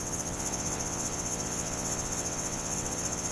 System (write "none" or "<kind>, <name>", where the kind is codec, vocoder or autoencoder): vocoder, WaveNeXt